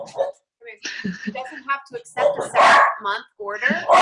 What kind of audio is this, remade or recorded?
recorded